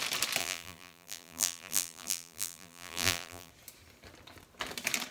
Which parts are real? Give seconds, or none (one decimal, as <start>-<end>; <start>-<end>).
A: 0.0-0.4; 3.5-5.1